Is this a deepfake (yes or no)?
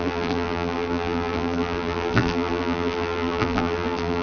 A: yes